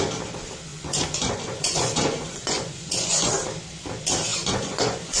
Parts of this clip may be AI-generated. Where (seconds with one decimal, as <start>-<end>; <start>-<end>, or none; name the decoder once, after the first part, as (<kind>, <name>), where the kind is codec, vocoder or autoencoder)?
0.7-3.3 (vocoder, Vocos); 4.3-5.2